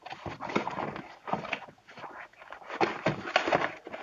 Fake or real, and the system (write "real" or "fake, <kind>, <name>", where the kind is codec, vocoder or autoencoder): real